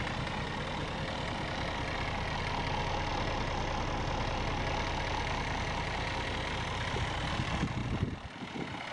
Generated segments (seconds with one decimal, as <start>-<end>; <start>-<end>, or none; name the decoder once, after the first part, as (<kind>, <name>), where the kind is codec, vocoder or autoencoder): 0.8-2.4 (vocoder, BigVGAN v2)